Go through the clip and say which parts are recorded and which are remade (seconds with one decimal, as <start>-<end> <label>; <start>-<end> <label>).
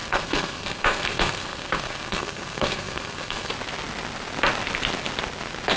0.0-3.5 remade; 3.5-5.8 recorded